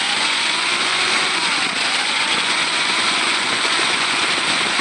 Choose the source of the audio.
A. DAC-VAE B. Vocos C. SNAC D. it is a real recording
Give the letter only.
B